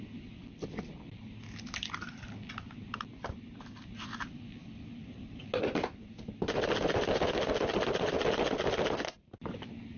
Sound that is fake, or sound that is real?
real